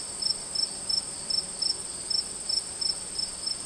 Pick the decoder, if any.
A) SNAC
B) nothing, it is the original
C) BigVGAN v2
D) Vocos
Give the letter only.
B